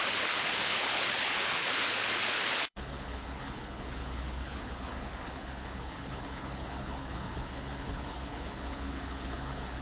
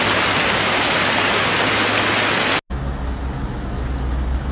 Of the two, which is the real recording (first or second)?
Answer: second